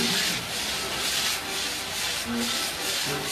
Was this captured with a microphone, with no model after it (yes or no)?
yes